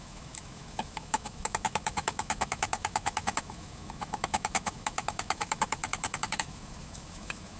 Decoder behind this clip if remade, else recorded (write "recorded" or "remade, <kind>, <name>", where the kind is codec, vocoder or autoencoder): remade, autoencoder, DAC-VAE